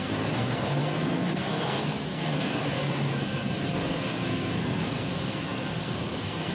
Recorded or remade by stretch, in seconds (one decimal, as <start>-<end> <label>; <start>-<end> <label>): 0.0-6.5 remade